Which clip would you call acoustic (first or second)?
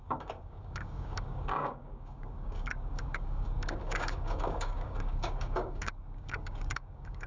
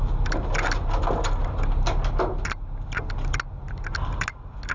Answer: second